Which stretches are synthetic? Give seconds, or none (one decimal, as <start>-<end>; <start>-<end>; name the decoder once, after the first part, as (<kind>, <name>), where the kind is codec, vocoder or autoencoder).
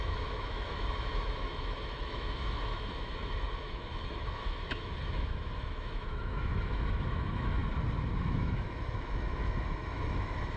0.0-7.6 (autoencoder, DAC-VAE); 8.2-10.6